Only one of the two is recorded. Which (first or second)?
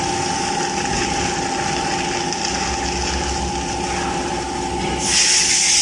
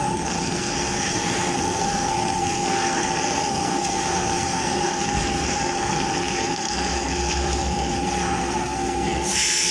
first